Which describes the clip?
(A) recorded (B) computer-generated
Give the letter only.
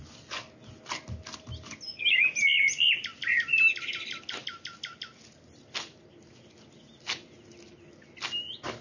A